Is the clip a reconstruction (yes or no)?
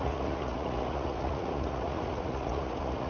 yes